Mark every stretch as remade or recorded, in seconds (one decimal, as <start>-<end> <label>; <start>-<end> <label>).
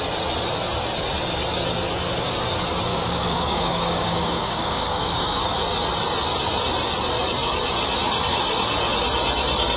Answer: 0.0-2.9 recorded; 2.9-5.5 remade; 5.5-9.8 recorded